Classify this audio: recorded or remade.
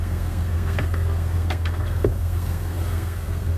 remade